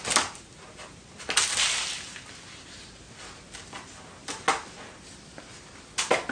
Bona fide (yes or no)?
yes